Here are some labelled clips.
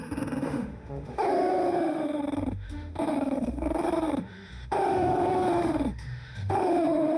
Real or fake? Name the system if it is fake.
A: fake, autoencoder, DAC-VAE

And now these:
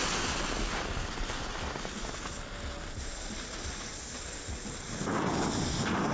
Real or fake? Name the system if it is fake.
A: real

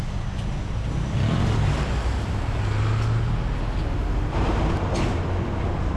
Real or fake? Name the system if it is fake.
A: real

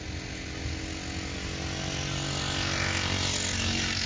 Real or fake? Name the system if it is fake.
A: real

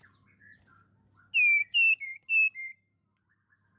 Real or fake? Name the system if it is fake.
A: real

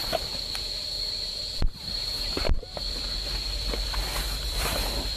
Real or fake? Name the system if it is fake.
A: real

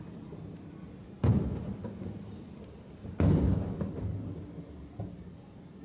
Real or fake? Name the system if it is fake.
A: real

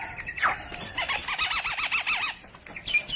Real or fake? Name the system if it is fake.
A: real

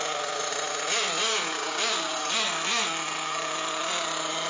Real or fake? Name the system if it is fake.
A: real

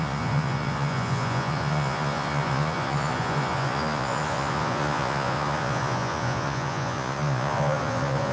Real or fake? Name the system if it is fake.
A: fake, vocoder, Vocos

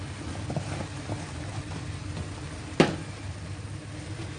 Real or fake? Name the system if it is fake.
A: real